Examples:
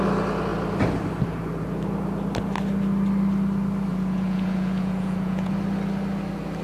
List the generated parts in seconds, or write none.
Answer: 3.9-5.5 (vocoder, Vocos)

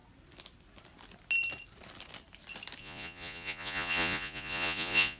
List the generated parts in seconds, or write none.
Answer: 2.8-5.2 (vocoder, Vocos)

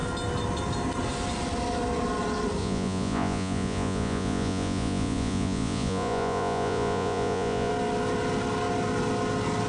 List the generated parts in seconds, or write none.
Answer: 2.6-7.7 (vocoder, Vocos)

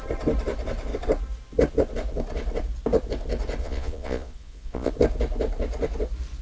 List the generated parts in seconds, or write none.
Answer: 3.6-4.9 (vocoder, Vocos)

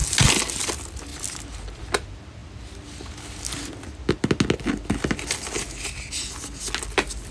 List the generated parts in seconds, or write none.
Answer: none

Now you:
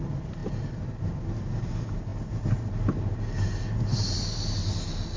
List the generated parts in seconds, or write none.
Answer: none